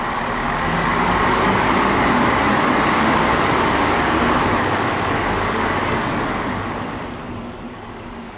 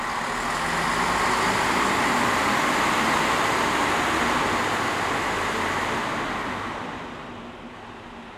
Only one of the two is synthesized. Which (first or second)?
first